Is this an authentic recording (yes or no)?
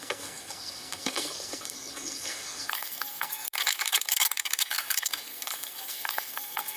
no